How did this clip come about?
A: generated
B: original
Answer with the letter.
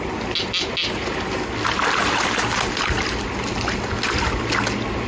B